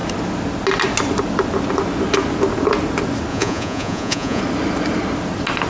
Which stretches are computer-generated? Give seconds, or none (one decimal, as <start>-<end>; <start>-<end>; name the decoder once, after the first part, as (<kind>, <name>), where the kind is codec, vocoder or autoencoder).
3.3-4.4 (vocoder, Vocos)